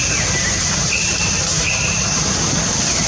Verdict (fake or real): fake